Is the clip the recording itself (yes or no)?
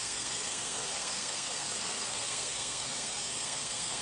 no